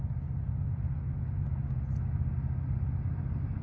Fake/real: real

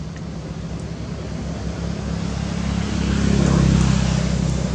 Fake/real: real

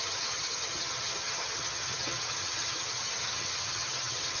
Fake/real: fake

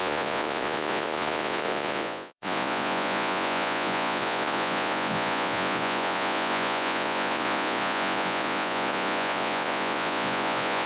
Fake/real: fake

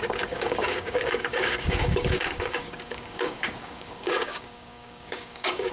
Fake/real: fake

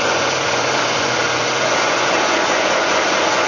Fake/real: fake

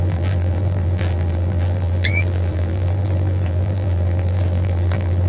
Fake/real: fake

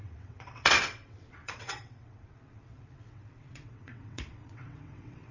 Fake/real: fake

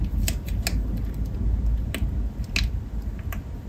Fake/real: real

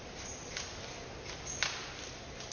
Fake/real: real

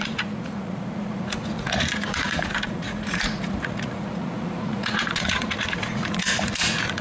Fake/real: fake